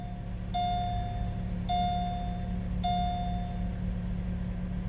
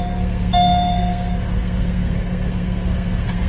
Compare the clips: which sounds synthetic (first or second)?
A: second